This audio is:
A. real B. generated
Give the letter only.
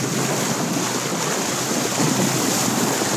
B